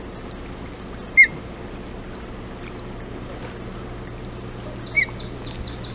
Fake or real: real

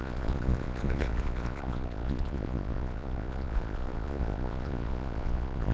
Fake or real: fake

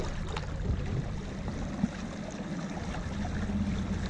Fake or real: real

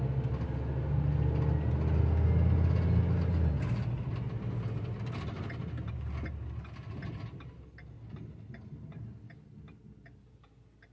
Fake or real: real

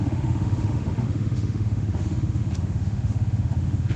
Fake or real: fake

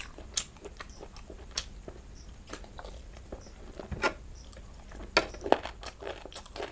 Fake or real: real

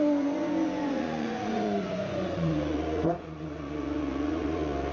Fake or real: fake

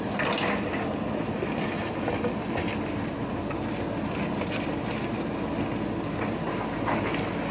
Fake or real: real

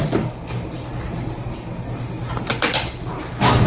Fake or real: fake